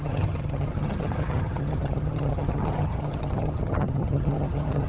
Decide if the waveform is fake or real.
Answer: fake